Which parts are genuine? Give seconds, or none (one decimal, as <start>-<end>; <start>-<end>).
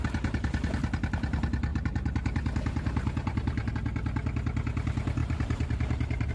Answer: 0.0-1.7; 3.7-5.2